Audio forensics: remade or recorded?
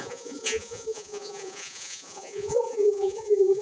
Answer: remade